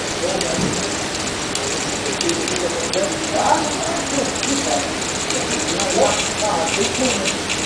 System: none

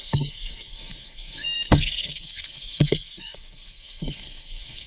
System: codec, SNAC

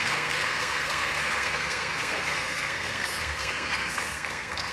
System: codec, SNAC